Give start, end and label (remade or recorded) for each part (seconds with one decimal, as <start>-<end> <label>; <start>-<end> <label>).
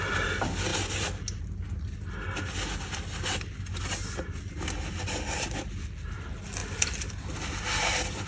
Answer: 0.0-8.3 recorded